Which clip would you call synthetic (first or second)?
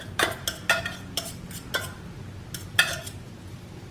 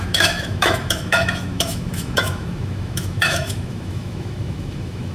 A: second